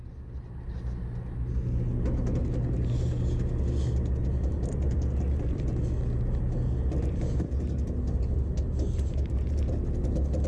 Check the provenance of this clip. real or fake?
real